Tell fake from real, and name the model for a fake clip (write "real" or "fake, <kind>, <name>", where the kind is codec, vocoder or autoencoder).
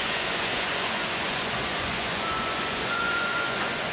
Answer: fake, vocoder, Vocos